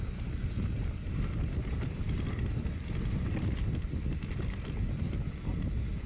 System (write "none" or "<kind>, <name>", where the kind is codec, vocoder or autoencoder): none